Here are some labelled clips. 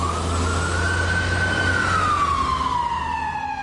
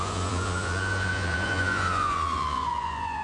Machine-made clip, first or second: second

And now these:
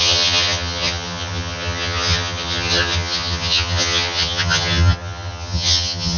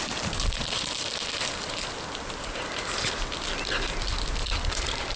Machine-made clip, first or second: first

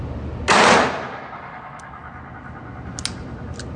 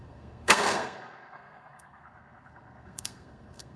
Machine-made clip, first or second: second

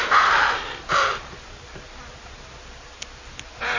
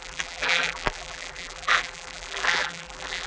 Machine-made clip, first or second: second